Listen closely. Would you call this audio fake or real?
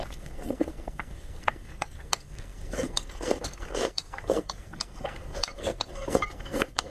fake